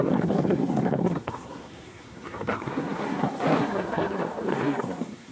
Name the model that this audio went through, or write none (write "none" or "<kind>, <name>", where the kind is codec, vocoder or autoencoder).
codec, SNAC